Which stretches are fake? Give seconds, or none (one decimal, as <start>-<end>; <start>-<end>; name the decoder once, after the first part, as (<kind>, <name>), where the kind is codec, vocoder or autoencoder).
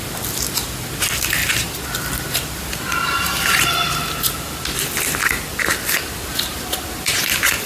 none